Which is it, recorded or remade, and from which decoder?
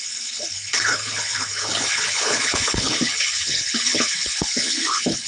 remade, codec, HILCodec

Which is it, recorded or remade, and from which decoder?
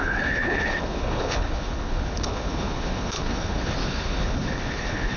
remade, codec, HILCodec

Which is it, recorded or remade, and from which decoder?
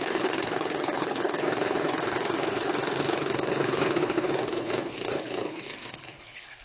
remade, codec, HILCodec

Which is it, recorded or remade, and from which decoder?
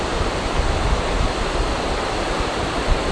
recorded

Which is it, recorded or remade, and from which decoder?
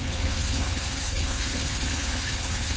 remade, codec, HILCodec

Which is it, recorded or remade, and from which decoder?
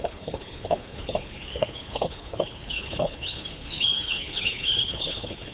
remade, codec, HILCodec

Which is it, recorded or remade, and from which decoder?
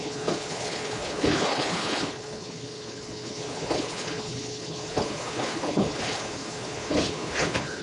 remade, codec, HILCodec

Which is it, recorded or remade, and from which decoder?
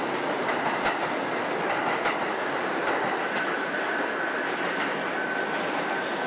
recorded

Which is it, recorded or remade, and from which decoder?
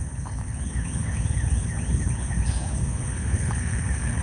remade, codec, HILCodec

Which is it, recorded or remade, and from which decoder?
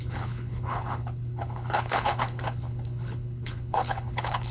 remade, codec, HILCodec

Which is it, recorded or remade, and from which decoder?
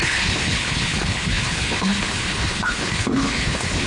remade, codec, HILCodec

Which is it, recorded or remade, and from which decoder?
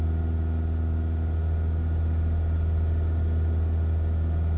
recorded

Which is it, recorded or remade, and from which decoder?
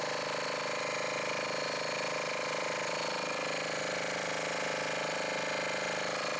recorded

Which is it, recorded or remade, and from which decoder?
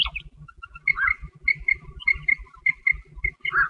recorded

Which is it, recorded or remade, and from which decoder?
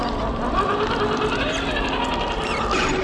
recorded